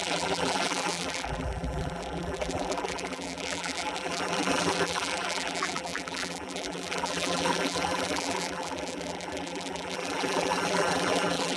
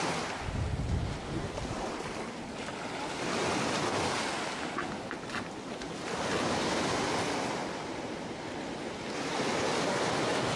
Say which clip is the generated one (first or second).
first